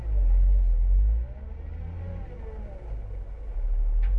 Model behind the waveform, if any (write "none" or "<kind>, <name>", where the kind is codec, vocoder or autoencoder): none